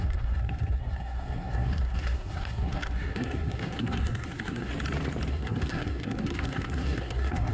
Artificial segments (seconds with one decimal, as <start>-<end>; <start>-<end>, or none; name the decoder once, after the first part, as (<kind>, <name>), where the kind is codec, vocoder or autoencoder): 0.0-4.7 (codec, SNAC); 5.3-7.5